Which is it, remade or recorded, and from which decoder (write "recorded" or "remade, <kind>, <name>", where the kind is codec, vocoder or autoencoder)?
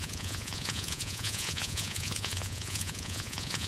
remade, vocoder, Vocos